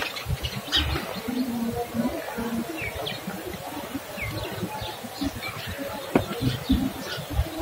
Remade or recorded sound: recorded